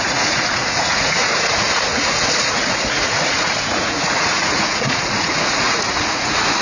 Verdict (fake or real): fake